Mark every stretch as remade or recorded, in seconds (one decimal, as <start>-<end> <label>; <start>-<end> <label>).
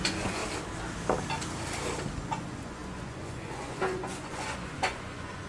0.0-0.4 remade; 0.4-2.2 recorded; 2.2-5.5 remade